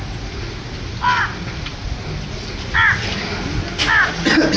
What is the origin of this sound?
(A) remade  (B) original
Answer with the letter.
B